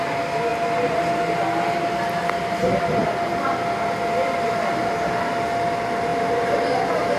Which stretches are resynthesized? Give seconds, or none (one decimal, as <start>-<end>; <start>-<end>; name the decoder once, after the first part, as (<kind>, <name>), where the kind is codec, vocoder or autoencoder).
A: none